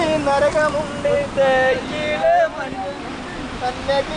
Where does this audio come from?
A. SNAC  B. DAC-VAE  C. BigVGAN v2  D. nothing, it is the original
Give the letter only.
D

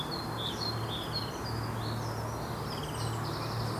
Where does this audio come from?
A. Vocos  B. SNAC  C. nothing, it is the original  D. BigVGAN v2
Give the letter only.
C